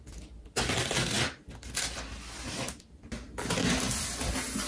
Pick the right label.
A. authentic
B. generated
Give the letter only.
A